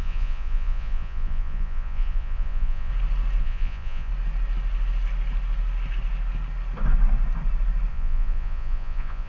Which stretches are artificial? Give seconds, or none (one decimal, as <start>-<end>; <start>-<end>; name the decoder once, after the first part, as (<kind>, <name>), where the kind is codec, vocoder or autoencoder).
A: 0.0-2.9 (vocoder, Vocos); 3.4-4.1; 7.9-9.3